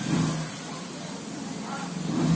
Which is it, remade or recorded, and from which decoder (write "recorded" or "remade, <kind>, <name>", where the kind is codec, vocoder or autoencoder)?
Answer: recorded